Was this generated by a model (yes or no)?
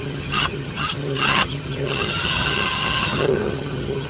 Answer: yes